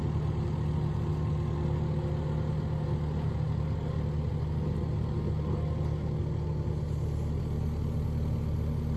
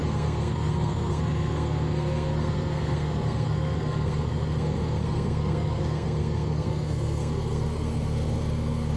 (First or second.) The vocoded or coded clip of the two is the second